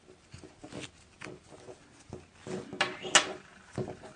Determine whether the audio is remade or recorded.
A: recorded